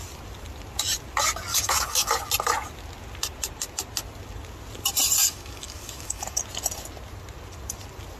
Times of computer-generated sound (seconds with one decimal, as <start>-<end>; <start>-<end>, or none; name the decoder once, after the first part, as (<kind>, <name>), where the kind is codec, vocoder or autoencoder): 1.5-2.1 (codec, DAC); 5.2-6.4